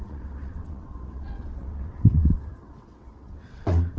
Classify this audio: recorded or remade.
remade